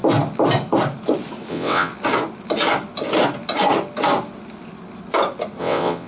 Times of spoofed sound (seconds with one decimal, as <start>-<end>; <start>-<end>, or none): 1.5-1.9; 5.6-6.1